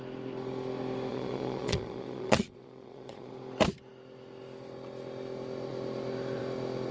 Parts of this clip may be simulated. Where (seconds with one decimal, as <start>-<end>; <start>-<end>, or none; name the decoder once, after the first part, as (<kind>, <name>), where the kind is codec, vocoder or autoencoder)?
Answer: 1.1-3.3 (vocoder, Vocos)